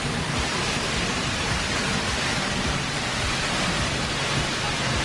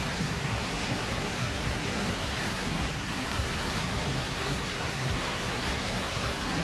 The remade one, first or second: second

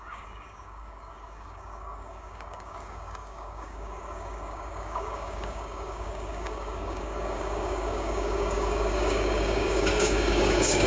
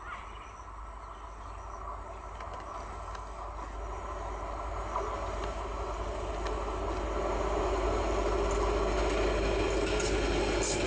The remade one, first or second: first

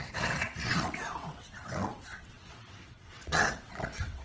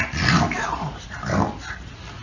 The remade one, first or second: first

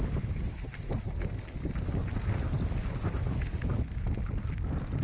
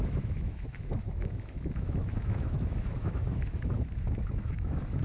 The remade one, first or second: second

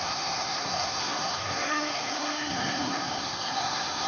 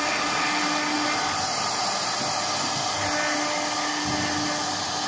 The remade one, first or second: first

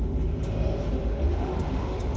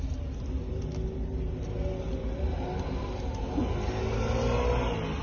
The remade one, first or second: first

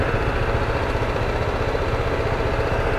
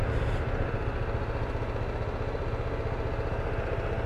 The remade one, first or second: first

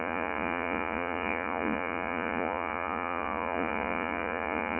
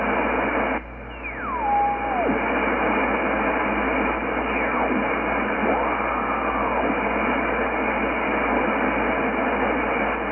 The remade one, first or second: first